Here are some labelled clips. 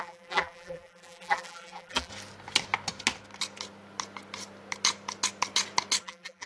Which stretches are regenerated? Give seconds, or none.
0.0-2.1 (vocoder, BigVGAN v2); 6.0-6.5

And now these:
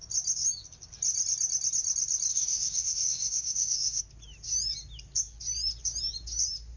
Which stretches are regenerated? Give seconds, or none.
2.3-4.0 (autoencoder, DAC-VAE)

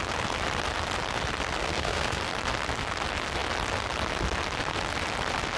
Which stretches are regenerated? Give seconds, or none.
1.6-2.2 (codec, SNAC)

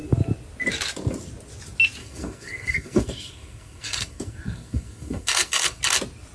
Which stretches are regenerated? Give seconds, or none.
2.0-5.8 (codec, SNAC)

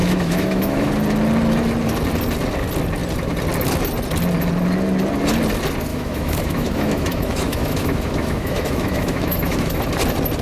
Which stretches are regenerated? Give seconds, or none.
0.0-0.9 (autoencoder, DAC-VAE); 5.9-9.8

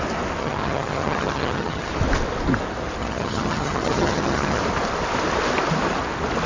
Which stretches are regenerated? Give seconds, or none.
0.4-1.9 (vocoder, HiFi-GAN); 3.0-4.6